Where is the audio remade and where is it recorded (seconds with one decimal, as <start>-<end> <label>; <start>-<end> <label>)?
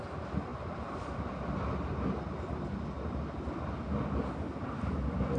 0.0-5.4 recorded